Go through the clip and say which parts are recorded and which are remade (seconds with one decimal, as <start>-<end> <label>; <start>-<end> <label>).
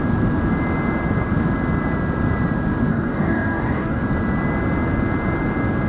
0.0-2.9 recorded; 2.9-4.0 remade; 4.0-5.9 recorded